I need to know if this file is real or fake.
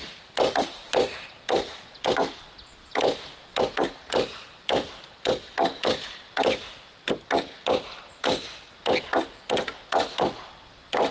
fake